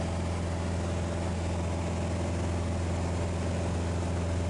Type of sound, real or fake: real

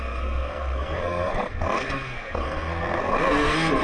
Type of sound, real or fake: fake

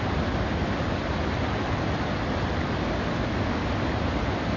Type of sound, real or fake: real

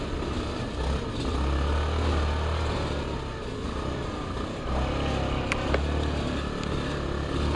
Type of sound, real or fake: real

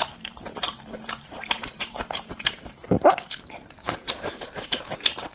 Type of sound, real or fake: fake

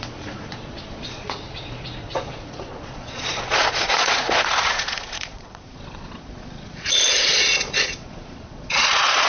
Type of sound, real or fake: fake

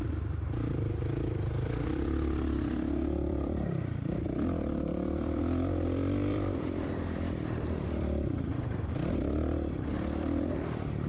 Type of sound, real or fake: fake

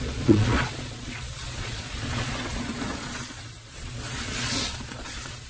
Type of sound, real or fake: fake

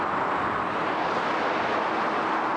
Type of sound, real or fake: real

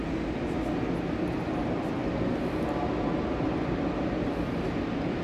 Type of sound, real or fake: real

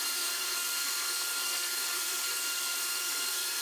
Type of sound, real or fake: fake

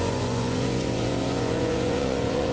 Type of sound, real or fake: fake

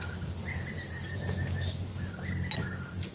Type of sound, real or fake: real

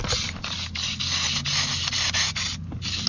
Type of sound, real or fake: real